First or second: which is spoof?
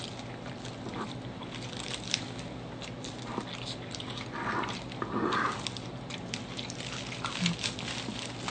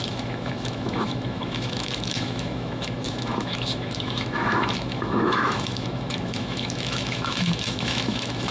second